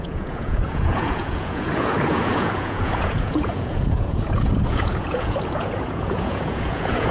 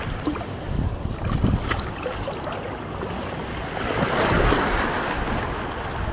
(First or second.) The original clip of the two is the second